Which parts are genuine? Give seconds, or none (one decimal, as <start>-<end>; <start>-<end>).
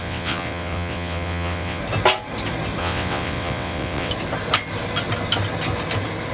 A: 1.8-2.8; 4.1-6.3